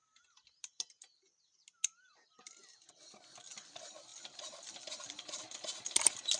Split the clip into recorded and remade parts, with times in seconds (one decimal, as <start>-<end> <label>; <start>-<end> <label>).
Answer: 0.0-6.4 recorded